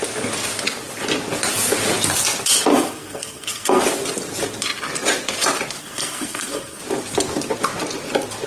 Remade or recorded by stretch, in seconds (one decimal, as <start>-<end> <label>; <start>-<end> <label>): 0.0-2.7 recorded; 2.7-3.8 remade; 3.8-5.8 recorded; 5.8-6.8 remade; 6.8-8.5 recorded